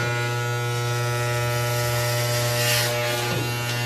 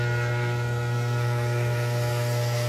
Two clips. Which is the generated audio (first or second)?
second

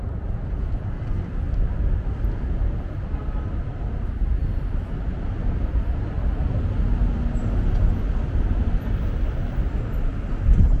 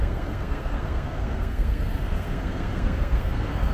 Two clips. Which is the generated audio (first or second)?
second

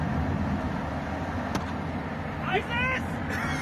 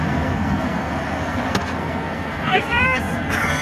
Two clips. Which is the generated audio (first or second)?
second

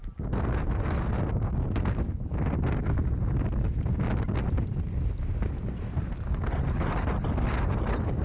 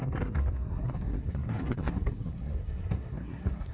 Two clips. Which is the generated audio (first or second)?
second